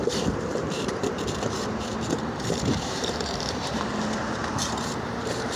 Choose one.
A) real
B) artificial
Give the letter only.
B